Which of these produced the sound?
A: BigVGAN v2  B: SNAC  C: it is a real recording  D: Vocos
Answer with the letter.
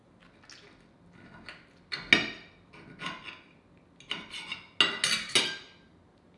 C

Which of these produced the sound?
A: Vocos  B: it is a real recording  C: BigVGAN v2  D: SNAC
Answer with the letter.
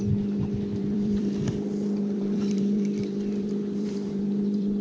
C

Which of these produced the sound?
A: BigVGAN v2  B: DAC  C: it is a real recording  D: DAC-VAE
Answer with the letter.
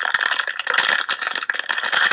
C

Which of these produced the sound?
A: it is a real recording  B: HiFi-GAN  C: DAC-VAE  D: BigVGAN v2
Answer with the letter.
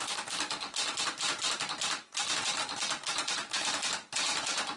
D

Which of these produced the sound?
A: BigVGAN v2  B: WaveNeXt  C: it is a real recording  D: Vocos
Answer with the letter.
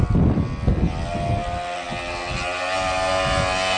C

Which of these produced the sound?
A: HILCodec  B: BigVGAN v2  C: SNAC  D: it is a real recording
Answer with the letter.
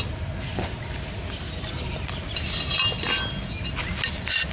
D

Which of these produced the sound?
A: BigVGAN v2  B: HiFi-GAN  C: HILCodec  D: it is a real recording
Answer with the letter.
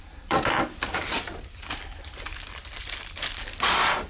A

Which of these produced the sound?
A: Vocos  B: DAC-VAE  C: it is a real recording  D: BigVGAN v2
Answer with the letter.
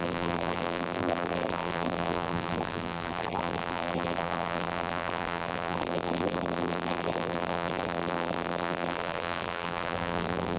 D